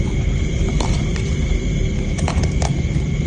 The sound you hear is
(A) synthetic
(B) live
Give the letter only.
A